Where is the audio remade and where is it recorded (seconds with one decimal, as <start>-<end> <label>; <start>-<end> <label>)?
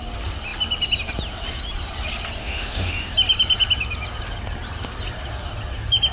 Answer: 0.0-2.4 recorded; 2.4-3.1 remade; 3.1-6.1 recorded